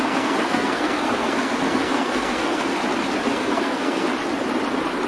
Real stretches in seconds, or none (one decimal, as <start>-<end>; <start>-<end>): 2.7-3.3; 4.1-5.1